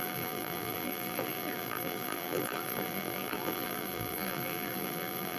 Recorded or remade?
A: remade